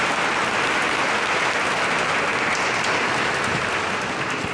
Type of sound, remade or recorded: recorded